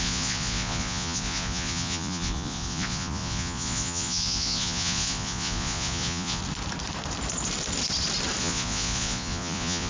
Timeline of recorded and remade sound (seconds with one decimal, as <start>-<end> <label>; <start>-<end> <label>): 0.0-6.4 remade; 6.4-8.4 recorded; 8.4-9.9 remade